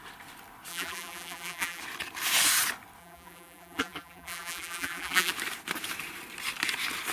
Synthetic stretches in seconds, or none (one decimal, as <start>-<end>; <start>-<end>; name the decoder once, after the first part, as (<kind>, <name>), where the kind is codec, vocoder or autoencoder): 0.7-1.8 (vocoder, BigVGAN v2); 3.0-5.3